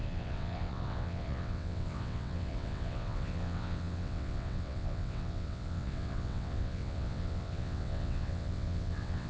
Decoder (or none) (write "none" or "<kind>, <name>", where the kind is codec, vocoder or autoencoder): vocoder, WaveNeXt